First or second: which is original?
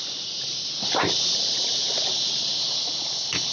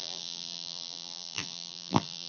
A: first